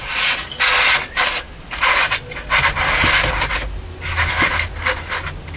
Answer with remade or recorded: recorded